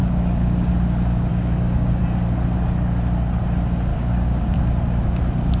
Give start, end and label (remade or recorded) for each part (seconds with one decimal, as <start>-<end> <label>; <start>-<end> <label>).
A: 0.0-0.7 remade; 0.7-1.3 recorded; 1.3-2.0 remade; 2.0-3.9 recorded; 3.9-4.6 remade; 4.6-5.6 recorded